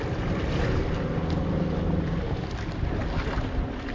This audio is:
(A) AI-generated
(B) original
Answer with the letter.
B